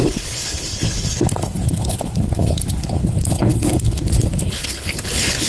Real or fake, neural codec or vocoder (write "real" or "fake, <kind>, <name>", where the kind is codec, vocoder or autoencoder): fake, codec, HILCodec